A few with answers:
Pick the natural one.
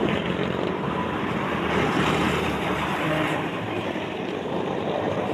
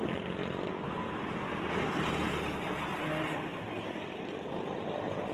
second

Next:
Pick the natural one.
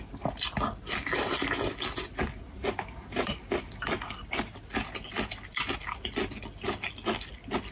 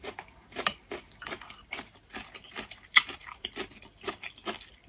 first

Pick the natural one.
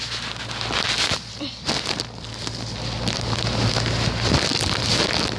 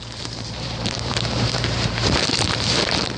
first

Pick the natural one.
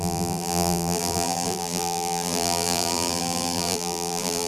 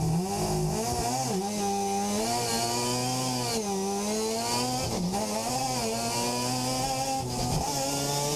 second